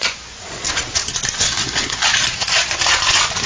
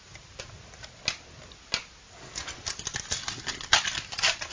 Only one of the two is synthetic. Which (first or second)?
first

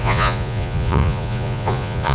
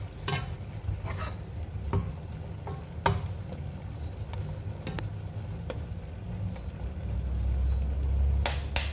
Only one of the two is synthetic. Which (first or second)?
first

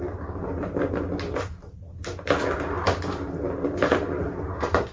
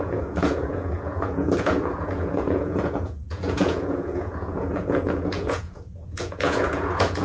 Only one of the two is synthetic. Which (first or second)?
second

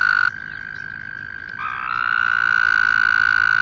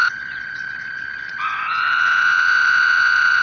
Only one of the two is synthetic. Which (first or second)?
second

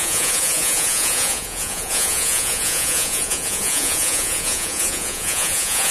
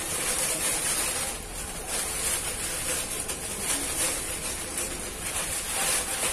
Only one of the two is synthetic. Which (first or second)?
first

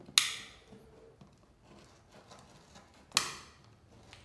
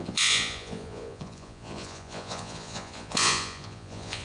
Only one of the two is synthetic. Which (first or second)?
second